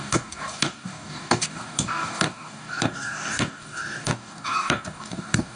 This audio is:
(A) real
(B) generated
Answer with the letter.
B